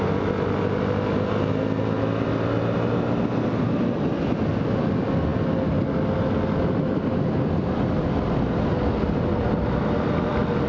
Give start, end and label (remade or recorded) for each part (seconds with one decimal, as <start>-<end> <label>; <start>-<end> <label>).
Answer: 0.0-10.7 recorded

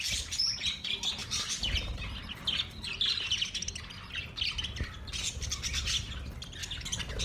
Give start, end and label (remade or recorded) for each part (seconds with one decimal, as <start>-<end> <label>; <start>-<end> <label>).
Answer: 0.0-7.2 recorded

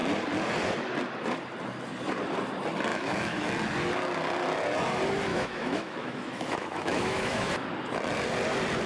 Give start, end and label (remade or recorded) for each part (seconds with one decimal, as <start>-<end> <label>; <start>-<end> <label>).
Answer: 0.0-2.9 recorded; 2.9-3.5 remade; 3.5-5.3 recorded; 5.3-7.5 remade; 7.5-8.9 recorded

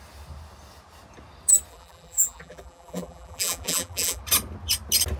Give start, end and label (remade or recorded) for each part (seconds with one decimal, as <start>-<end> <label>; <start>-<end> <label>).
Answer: 0.0-1.7 recorded; 1.7-4.2 remade; 4.2-5.2 recorded

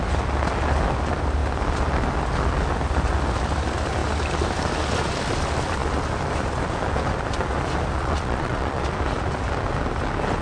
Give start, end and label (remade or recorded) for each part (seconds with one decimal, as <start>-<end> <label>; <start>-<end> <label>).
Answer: 0.0-8.0 recorded; 8.0-8.8 remade; 8.8-10.4 recorded